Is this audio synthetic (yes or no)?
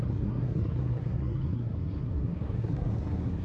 yes